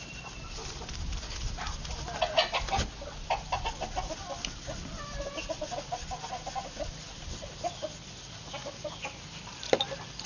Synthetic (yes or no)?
no